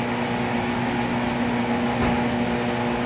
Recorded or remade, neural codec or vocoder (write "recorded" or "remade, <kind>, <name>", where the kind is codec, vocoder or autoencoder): recorded